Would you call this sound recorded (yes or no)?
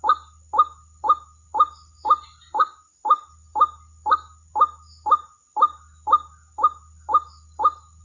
yes